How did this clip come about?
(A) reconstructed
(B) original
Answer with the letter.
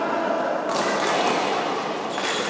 B